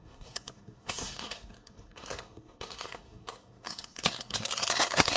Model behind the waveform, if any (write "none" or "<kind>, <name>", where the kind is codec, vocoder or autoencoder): codec, SNAC